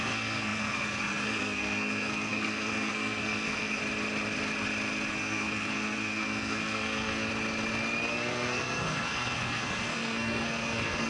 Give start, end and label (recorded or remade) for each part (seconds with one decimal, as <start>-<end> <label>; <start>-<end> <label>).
0.0-3.8 remade; 3.8-5.1 recorded; 5.1-7.3 remade; 7.3-8.1 recorded; 8.1-11.1 remade